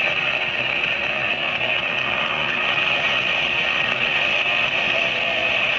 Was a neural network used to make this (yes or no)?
yes